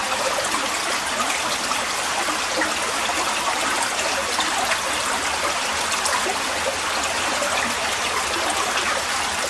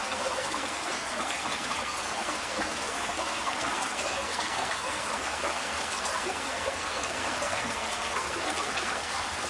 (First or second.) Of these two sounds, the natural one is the first